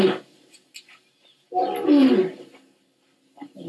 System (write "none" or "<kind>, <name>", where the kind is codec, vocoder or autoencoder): none